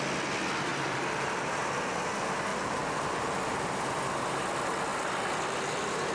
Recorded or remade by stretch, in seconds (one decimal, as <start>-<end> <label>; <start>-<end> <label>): 0.0-0.7 recorded; 0.7-1.3 remade; 1.3-2.5 recorded; 2.5-3.4 remade; 3.4-6.1 recorded